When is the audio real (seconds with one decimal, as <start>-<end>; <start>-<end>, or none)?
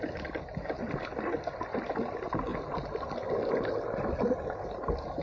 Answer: 0.0-5.2